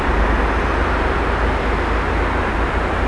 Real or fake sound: real